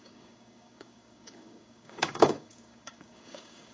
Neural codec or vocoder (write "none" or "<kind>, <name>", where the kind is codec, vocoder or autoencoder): codec, DAC